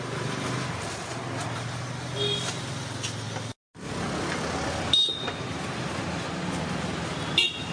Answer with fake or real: real